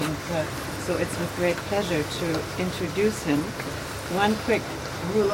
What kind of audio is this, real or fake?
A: real